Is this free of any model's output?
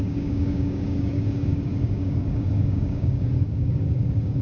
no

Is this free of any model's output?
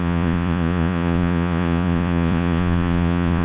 no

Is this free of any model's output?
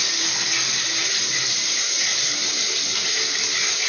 yes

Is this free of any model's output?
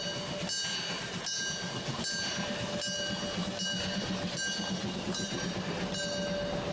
yes